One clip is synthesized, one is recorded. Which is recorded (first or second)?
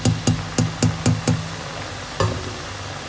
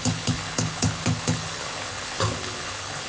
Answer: first